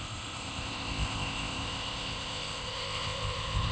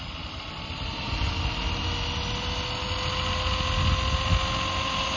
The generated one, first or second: first